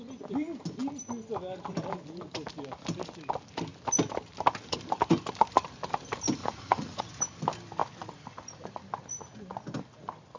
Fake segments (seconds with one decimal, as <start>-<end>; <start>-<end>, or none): 6.4-7.0